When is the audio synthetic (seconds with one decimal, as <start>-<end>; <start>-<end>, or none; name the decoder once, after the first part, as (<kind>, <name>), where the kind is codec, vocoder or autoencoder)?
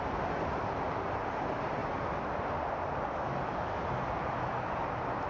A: none